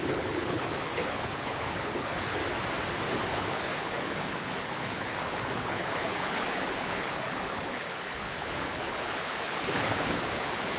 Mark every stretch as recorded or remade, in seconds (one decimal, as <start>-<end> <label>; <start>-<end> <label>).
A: 0.0-2.4 remade; 2.4-3.3 recorded; 3.3-10.8 remade